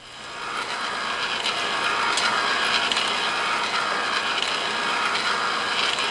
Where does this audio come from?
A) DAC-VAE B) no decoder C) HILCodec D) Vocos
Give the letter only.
B